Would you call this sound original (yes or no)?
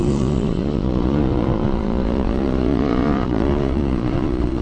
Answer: no